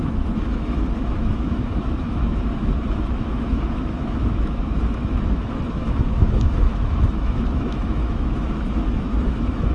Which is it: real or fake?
fake